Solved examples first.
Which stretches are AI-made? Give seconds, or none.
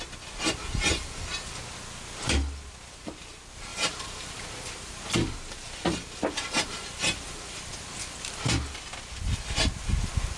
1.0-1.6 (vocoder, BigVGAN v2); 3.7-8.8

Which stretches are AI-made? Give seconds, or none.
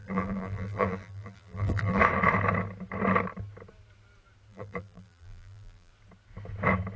0.0-2.0 (vocoder, BigVGAN v2); 4.5-5.9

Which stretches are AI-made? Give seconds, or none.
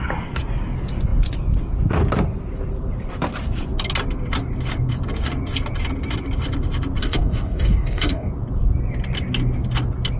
7.0-8.3 (codec, DAC)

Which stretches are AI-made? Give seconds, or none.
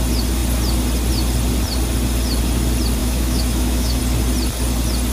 3.0-4.0 (autoencoder, DAC-VAE)